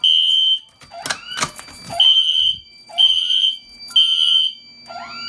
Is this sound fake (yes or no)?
no